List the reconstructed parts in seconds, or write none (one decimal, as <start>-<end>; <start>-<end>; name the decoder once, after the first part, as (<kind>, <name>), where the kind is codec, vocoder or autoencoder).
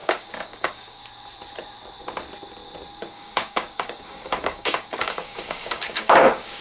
0.0-1.0 (codec, DAC); 3.0-6.6